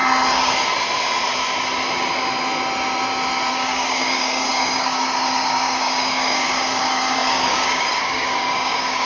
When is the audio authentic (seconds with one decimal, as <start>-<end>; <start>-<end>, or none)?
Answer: 0.0-3.5